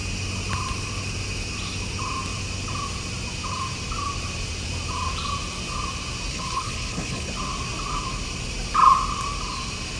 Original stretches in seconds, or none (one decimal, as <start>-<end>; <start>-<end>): 0.0-6.3; 7.3-10.0